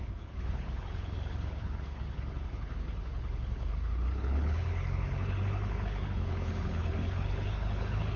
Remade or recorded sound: remade